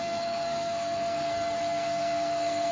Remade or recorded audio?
remade